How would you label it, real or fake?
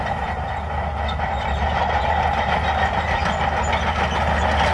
real